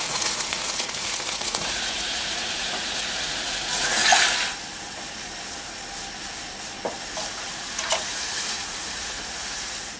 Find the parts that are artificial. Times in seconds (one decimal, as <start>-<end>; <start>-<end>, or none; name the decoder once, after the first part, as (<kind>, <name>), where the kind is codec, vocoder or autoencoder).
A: 0.0-4.1 (vocoder, Vocos); 7.5-10.0